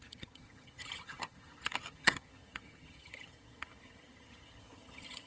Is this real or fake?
fake